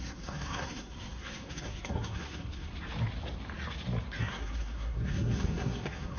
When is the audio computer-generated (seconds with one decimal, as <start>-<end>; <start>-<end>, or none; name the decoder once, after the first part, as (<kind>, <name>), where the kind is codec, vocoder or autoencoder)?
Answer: 0.0-2.7 (codec, SNAC); 4.2-6.2